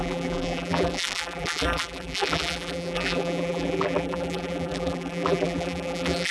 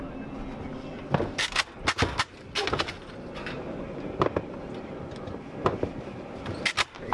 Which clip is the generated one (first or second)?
first